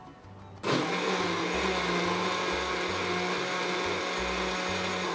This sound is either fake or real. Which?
real